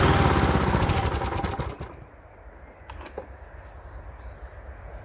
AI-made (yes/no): no